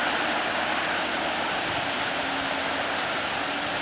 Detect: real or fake real